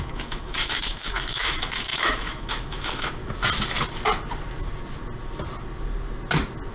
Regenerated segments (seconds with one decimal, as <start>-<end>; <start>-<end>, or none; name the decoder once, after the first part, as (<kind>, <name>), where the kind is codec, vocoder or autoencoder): 0.0-3.2 (autoencoder, DAC-VAE)